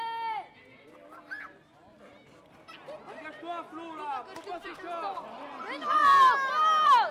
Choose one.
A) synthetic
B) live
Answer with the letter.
B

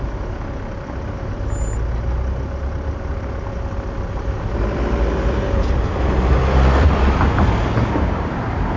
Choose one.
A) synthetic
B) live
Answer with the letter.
B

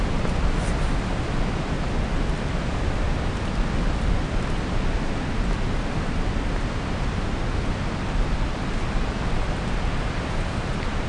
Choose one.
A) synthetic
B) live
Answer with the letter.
B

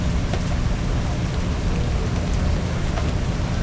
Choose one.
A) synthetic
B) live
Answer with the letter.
B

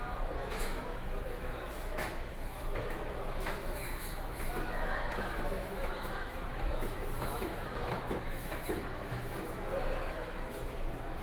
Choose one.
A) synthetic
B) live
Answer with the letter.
A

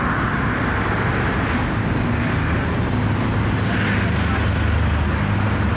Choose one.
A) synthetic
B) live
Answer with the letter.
B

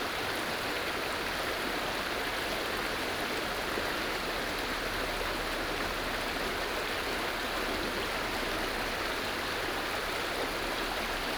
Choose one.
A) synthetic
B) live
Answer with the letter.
B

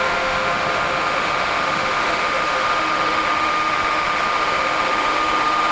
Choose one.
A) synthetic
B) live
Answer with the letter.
A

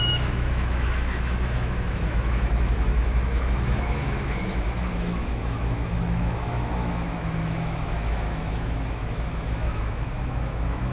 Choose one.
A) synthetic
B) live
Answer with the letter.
A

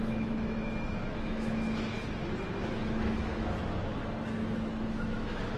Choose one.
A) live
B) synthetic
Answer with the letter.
B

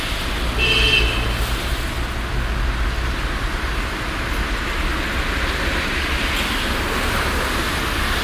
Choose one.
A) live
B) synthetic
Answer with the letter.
A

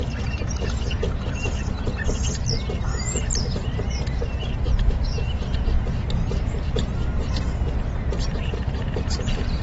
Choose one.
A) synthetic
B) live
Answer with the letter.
B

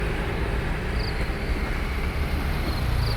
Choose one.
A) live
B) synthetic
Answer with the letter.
A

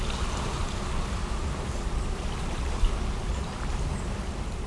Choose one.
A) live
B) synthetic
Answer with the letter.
A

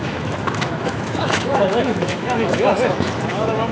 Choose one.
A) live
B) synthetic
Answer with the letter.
B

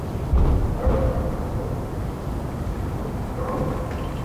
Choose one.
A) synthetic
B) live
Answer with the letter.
B